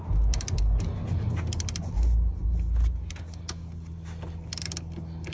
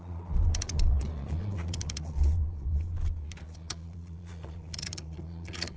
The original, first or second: first